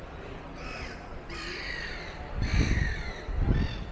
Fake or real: real